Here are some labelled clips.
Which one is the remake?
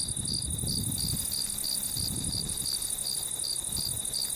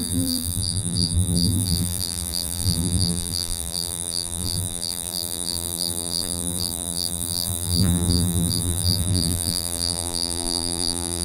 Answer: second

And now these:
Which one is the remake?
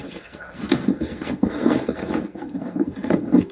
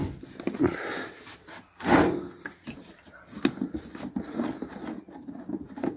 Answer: first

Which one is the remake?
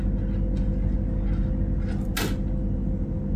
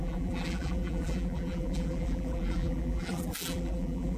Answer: second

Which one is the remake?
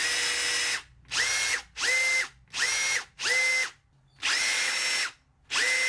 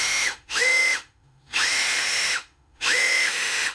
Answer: second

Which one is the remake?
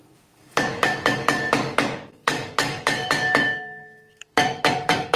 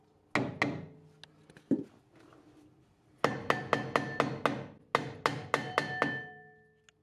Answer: first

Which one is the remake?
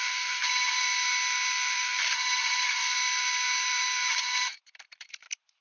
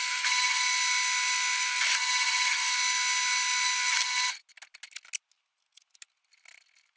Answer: first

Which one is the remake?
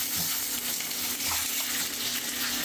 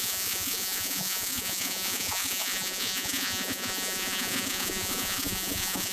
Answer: second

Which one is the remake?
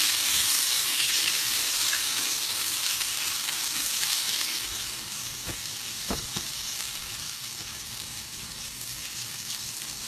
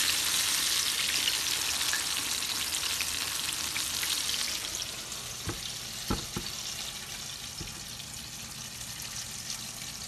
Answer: first